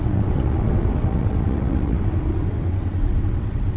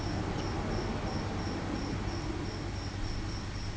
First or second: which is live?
second